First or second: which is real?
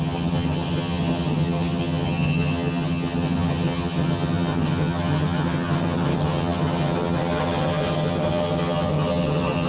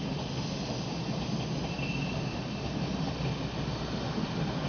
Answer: second